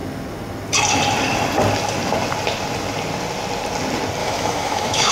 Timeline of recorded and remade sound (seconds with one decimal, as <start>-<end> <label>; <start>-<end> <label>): 0.0-4.2 recorded; 4.2-5.1 remade

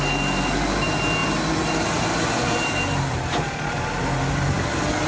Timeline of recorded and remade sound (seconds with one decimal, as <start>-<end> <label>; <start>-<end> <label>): 0.0-5.1 recorded

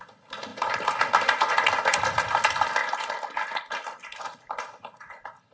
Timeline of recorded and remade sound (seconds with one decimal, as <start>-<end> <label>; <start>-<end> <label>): 0.0-5.5 recorded

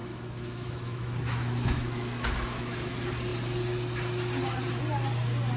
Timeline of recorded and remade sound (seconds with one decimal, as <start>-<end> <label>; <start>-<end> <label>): 0.0-2.9 remade; 2.9-5.6 recorded